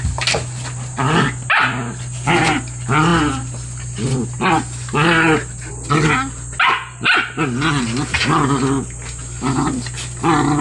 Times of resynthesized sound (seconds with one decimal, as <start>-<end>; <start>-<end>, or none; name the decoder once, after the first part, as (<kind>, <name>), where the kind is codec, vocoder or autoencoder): none